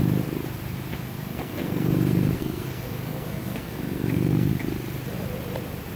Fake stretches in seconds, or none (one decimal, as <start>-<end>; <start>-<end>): 0.9-4.5